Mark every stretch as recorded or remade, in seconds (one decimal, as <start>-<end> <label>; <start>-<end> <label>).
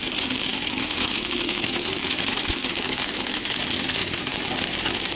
0.0-0.5 recorded; 0.5-3.6 remade; 3.6-4.0 recorded; 4.0-4.5 remade; 4.5-5.2 recorded